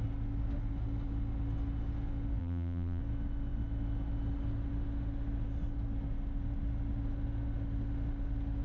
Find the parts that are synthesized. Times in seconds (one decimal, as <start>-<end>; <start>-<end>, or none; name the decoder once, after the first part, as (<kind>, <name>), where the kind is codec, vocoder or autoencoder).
2.4-3.0 (vocoder, BigVGAN v2)